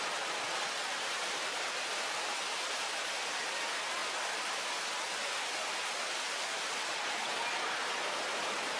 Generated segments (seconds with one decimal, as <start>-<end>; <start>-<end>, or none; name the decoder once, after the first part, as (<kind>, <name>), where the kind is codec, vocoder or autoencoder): none